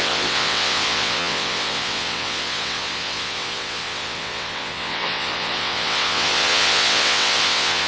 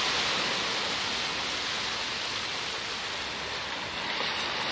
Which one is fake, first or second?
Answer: first